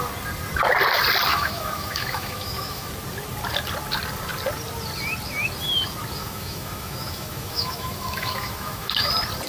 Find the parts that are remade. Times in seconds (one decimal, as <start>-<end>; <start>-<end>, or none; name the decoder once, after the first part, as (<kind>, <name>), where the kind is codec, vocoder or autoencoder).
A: 1.3-2.9 (autoencoder, DAC-VAE); 6.2-9.1